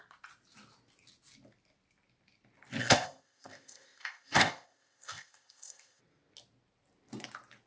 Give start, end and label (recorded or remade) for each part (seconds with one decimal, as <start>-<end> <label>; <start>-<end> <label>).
0.0-2.8 recorded; 2.8-6.0 remade; 6.0-7.7 recorded